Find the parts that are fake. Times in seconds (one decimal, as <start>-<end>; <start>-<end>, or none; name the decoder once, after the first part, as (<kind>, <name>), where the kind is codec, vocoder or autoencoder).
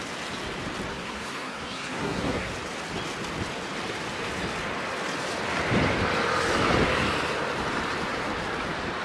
0.9-2.5 (codec, SNAC)